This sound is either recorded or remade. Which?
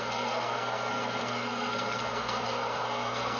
remade